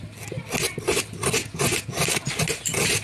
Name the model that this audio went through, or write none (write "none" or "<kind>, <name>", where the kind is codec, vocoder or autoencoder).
none